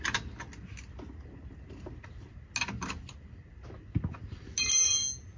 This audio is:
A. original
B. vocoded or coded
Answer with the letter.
A